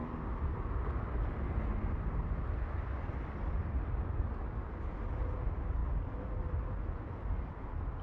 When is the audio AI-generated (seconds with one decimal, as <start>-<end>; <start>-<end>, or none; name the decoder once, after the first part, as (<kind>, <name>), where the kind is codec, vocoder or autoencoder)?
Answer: none